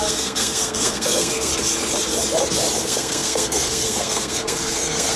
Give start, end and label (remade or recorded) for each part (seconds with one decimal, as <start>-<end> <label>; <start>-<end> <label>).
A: 0.0-1.5 remade; 1.5-2.8 recorded; 2.8-5.2 remade

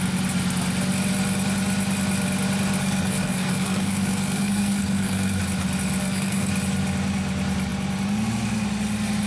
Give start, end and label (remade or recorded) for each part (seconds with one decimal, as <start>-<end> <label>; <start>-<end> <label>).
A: 0.0-2.8 recorded; 2.8-5.4 remade; 5.4-6.0 recorded; 6.0-6.5 remade; 6.5-9.3 recorded

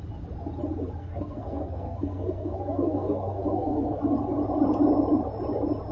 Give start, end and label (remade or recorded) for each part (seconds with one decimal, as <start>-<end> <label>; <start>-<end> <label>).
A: 0.0-1.0 recorded; 1.0-4.0 remade; 4.0-5.9 recorded

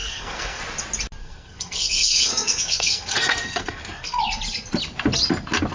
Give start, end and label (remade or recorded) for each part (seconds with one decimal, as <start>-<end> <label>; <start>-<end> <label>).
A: 0.0-0.6 remade; 0.6-1.2 recorded; 1.2-4.2 remade; 4.2-5.7 recorded